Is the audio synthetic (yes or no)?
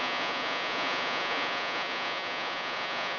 yes